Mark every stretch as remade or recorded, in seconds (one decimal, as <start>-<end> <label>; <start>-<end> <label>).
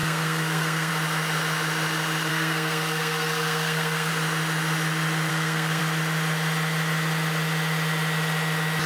0.0-0.9 remade; 0.9-2.3 recorded; 2.3-4.1 remade; 4.1-5.3 recorded; 5.3-5.8 remade; 5.8-8.9 recorded